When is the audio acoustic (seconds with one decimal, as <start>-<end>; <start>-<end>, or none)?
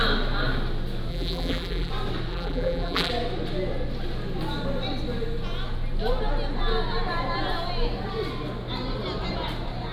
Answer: 0.0-1.1; 1.9-2.3; 3.1-9.9